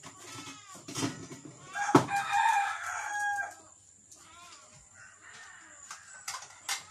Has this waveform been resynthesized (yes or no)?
no